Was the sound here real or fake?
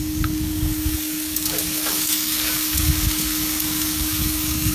fake